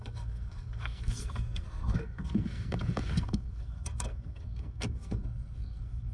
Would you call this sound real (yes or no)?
no